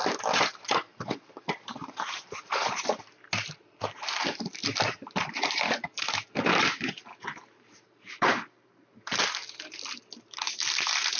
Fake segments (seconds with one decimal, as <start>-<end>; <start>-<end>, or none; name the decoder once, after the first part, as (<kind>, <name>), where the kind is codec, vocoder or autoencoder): 0.9-1.4 (vocoder, BigVGAN v2); 1.8-2.8; 6.5-8.9

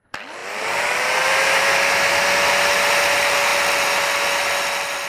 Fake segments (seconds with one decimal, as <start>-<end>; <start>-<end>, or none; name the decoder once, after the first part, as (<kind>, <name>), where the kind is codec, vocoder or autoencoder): 0.4-1.7 (vocoder, BigVGAN v2)

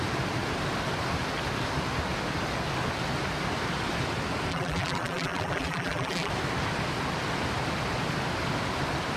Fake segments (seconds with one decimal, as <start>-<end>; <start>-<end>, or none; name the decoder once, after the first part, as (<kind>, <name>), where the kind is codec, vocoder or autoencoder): 4.5-6.3 (vocoder, BigVGAN v2)

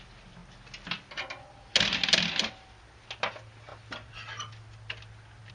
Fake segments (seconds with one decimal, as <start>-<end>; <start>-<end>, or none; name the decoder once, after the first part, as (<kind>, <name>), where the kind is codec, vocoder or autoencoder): none

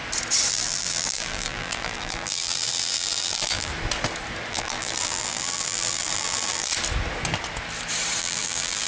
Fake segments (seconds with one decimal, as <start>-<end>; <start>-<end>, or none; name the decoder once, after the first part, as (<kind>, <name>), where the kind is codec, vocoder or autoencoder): 0.5-3.7 (vocoder, BigVGAN v2); 4.5-6.7; 8.2-8.9

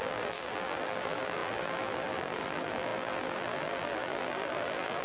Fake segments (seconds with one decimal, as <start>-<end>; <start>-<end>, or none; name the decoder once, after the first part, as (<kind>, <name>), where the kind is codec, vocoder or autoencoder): 0.0-5.0 (vocoder, BigVGAN v2)